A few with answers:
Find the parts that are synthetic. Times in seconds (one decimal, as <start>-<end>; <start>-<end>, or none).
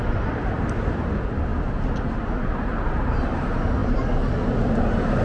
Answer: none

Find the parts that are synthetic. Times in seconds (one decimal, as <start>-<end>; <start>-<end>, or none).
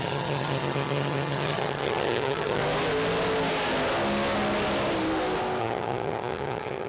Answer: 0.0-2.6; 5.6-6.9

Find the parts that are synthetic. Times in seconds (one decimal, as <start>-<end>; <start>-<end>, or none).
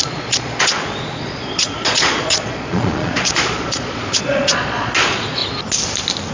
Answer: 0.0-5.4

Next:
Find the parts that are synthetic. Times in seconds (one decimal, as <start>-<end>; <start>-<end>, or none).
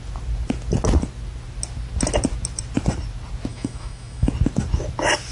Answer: 3.5-4.3